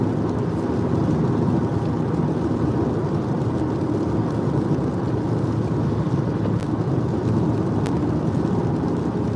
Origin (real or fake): real